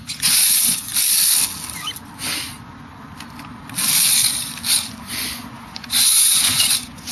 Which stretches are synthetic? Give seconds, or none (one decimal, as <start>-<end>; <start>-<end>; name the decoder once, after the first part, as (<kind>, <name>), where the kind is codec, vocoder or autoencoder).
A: 0.0-0.9 (vocoder, Vocos); 5.1-7.1

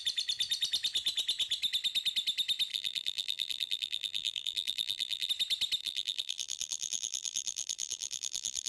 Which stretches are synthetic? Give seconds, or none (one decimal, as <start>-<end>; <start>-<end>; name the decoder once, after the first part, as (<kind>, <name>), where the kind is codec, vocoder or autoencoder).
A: 2.7-5.3 (vocoder, BigVGAN v2); 5.8-8.7

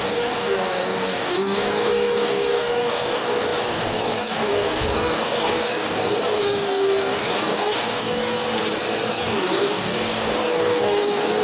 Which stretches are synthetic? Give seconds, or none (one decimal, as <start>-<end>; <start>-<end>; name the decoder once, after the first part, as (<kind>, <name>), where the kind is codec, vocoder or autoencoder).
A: 0.0-8.3 (codec, DAC); 9.1-11.4

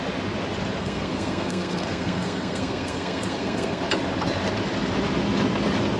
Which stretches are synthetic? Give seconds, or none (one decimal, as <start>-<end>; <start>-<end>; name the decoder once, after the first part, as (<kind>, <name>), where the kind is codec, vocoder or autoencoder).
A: 0.8-3.8 (codec, SNAC)